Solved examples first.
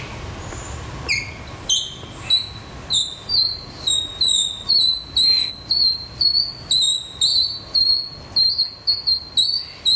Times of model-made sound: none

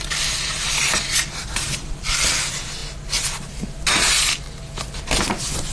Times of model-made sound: 0.0-2.8 (vocoder, BigVGAN v2)

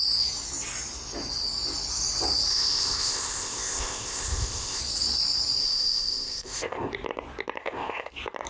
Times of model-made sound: 2.5-4.8 (codec, ZipCodec); 5.6-6.9; 7.6-8.1

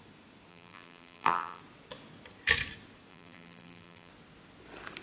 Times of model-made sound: 0.5-1.6 (vocoder, BigVGAN v2); 3.1-4.1

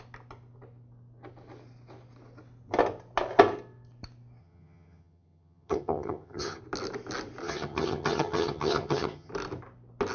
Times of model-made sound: 4.4-6.6 (vocoder, HiFi-GAN); 7.4-9.3

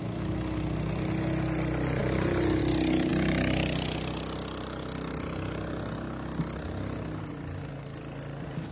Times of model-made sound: none

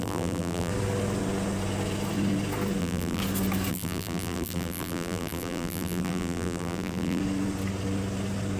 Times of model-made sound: 0.0-0.7 (vocoder, BigVGAN v2); 2.8-3.2; 3.7-7.2

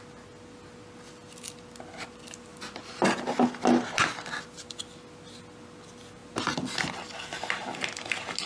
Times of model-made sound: none